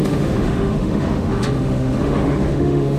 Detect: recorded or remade remade